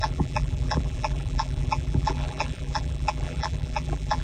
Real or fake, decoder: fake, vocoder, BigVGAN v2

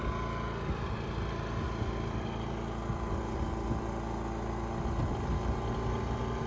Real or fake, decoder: real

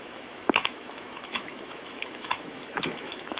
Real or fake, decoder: fake, autoencoder, DAC-VAE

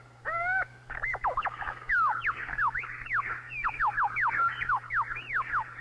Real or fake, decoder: fake, codec, DAC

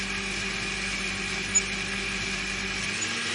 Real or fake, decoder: real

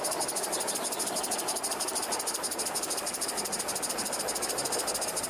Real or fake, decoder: real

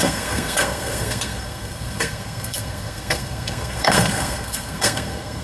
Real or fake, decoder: fake, codec, SNAC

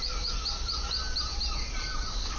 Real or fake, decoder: real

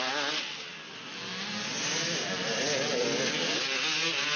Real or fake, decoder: real